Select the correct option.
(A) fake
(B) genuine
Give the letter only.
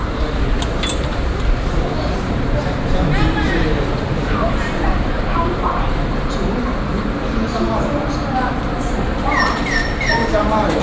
A